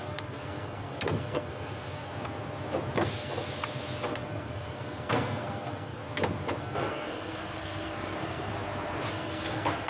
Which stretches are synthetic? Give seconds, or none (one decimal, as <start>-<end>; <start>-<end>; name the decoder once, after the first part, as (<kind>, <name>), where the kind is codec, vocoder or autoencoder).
0.0-2.1 (codec, SNAC); 2.9-3.4; 4.1-6.0; 6.6-8.5; 9.1-9.9